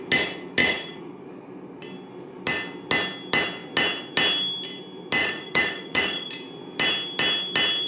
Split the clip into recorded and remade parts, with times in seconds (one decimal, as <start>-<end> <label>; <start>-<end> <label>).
0.0-0.6 recorded; 0.6-1.1 remade; 1.1-5.2 recorded; 5.2-6.3 remade; 6.3-7.9 recorded